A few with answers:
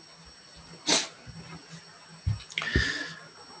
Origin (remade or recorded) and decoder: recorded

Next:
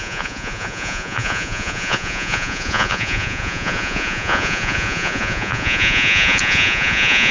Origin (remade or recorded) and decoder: remade, vocoder, Vocos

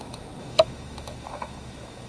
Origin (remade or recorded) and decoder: remade, autoencoder, DAC-VAE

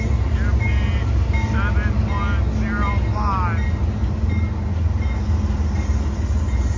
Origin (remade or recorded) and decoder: recorded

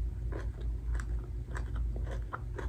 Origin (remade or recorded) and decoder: recorded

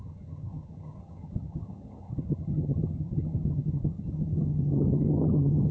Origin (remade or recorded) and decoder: remade, vocoder, HiFi-GAN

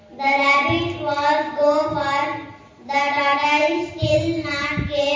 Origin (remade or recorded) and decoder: recorded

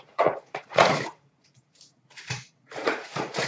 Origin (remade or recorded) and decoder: remade, vocoder, Vocos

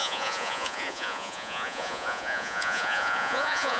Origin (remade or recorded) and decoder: remade, vocoder, Vocos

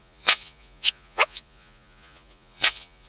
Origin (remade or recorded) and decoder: remade, vocoder, Vocos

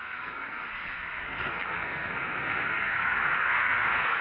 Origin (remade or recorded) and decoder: remade, codec, SNAC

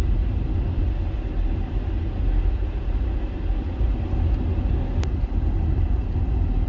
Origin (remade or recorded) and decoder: recorded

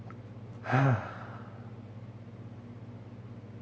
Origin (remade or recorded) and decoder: recorded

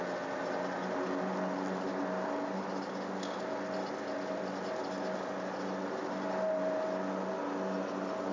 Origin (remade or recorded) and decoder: recorded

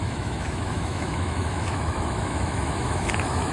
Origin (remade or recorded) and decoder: remade, autoencoder, DAC-VAE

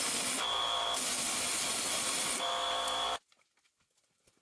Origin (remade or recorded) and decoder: recorded